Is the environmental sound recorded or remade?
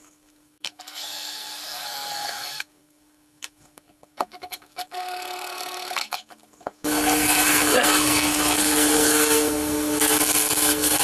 remade